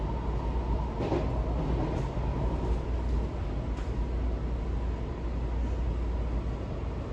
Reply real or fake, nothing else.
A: real